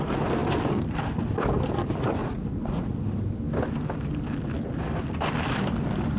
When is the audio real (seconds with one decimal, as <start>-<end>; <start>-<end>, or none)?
0.0-2.2; 3.0-6.2